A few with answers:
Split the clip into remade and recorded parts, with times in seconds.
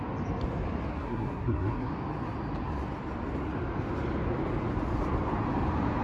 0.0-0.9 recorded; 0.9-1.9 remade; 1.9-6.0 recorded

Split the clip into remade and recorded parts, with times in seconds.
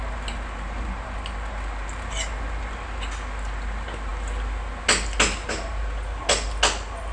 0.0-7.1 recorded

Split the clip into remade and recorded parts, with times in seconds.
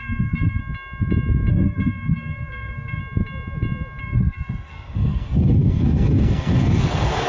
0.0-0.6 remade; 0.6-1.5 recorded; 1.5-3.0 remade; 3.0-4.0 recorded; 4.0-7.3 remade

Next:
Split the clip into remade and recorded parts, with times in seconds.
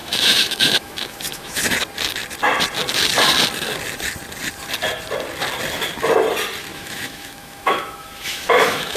0.0-1.6 remade; 1.6-6.7 recorded; 6.7-9.0 remade